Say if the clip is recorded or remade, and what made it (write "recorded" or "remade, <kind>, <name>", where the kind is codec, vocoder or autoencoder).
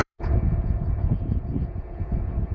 remade, vocoder, Vocos